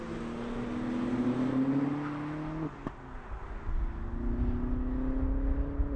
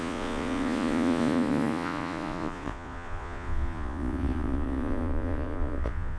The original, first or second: first